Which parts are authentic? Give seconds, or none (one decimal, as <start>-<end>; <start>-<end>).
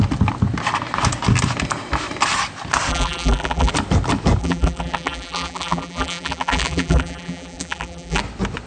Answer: 0.0-2.9; 3.7-4.4; 8.2-8.7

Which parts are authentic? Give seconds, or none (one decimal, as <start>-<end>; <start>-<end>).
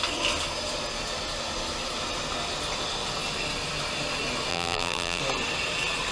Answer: 0.0-4.5; 5.2-6.1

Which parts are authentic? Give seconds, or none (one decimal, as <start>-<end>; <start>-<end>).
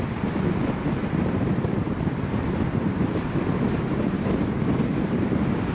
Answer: 0.0-1.0; 4.4-4.9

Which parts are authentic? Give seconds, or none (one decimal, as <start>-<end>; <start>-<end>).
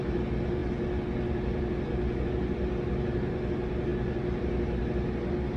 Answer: 0.0-5.6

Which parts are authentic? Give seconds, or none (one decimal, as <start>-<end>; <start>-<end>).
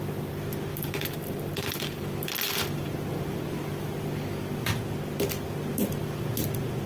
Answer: 0.0-0.7; 4.8-6.9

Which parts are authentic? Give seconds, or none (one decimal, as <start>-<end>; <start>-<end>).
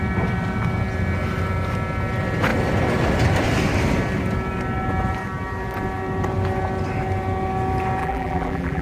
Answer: 0.0-8.0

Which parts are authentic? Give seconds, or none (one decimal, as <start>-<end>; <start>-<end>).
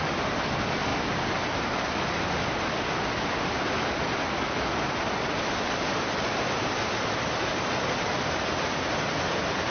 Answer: 0.0-9.7